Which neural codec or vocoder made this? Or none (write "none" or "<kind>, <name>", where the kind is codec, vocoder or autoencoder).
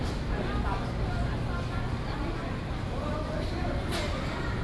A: none